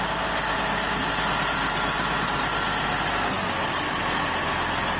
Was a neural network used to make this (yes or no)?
no